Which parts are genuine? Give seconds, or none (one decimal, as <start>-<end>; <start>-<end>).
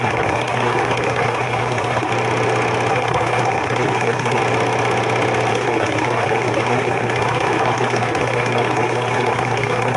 2.1-2.9; 4.4-5.5